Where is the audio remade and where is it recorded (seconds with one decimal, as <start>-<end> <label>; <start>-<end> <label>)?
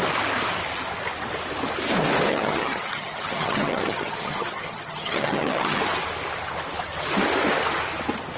0.0-2.3 recorded; 2.3-5.8 remade; 5.8-8.4 recorded